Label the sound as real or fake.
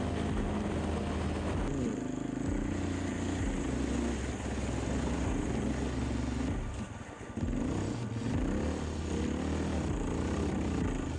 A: real